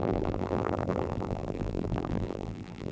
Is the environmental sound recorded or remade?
remade